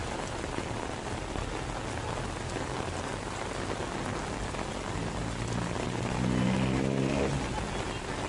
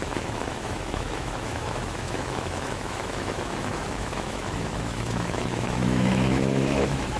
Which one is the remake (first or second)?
second